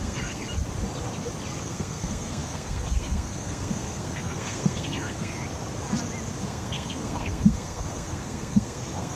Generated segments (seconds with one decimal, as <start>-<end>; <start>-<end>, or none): 0.0-0.4; 1.6-5.3; 6.4-9.2